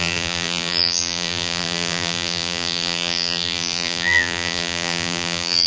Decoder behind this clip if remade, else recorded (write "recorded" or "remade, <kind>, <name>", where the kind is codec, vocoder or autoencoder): remade, vocoder, BigVGAN v2